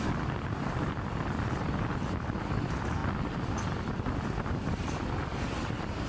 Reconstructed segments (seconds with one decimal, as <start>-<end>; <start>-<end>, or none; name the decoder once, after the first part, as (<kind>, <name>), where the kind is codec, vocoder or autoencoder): none